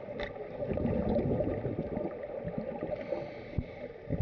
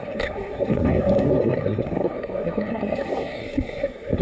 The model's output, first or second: second